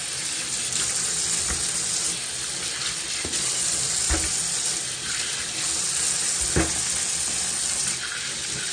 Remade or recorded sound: recorded